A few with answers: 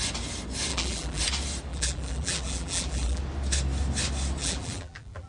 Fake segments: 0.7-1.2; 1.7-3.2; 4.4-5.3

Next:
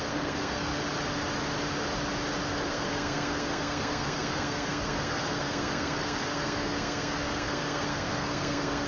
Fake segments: 0.0-0.7; 2.7-8.9

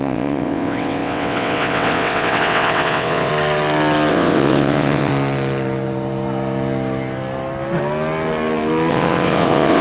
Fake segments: 0.0-3.3; 4.1-5.1; 8.9-9.8

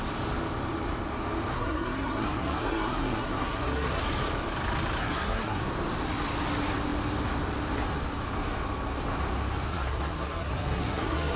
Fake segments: 1.5-4.0; 5.0-5.6; 9.7-11.4

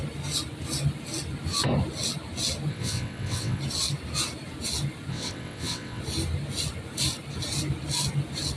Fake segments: 2.7-3.6; 5.1-6.0

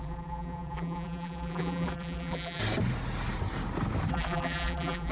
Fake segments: 0.0-2.6; 4.1-5.1